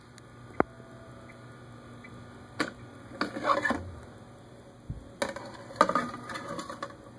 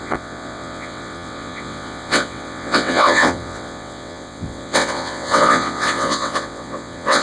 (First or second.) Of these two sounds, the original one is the first